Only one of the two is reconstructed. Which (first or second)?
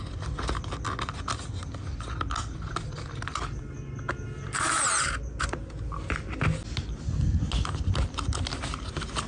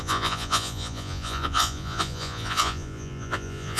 second